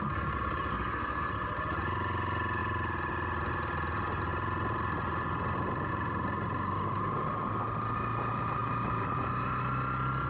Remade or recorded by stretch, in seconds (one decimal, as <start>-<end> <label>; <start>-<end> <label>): 0.0-0.7 recorded; 0.7-1.3 remade; 1.3-10.3 recorded